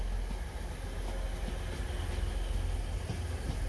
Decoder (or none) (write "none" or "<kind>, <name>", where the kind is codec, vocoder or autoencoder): none